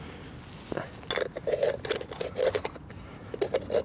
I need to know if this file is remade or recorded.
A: recorded